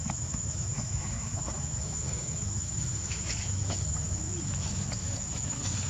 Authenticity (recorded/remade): remade